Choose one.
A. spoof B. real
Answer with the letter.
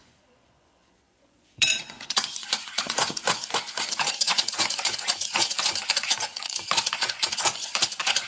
A